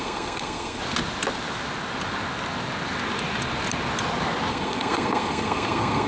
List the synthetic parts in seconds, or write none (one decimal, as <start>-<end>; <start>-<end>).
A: 0.0-0.8; 4.5-6.1

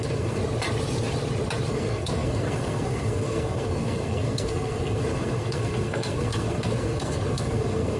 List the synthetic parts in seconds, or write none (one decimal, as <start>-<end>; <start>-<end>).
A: 0.0-0.4; 1.7-8.0

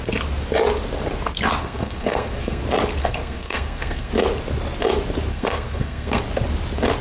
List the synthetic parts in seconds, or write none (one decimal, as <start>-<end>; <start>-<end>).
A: 1.6-2.6; 3.0-4.1; 5.3-6.2

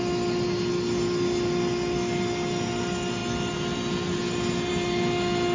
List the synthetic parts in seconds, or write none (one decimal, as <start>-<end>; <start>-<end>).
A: none